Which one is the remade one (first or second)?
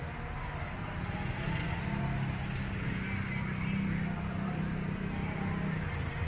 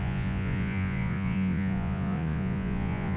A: second